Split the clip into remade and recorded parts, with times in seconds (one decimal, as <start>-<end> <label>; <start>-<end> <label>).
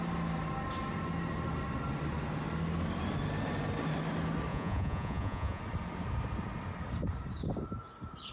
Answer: 0.0-4.5 recorded; 4.5-5.6 remade; 5.6-8.3 recorded